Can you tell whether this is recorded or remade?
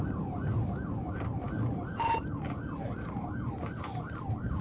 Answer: remade